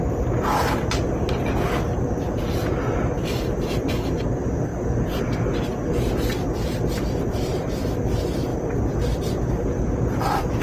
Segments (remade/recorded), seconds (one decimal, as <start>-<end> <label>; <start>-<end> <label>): 0.0-8.5 recorded; 8.5-10.6 remade